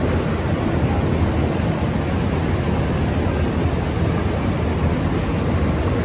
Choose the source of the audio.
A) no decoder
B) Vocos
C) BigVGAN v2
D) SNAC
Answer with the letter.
A